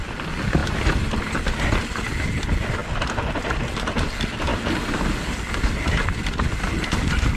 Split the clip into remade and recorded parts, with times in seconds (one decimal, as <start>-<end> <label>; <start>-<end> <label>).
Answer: 0.0-7.4 recorded